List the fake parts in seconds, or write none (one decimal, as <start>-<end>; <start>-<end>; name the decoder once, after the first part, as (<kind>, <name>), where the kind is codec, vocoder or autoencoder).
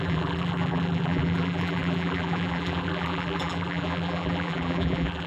0.0-5.3 (vocoder, BigVGAN v2)